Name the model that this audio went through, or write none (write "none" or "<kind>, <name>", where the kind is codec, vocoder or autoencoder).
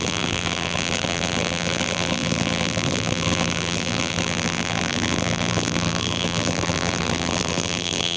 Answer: vocoder, BigVGAN v2